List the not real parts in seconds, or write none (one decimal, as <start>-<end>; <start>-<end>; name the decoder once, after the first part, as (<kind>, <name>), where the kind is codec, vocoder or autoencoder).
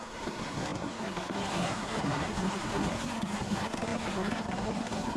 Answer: 0.0-5.2 (codec, SNAC)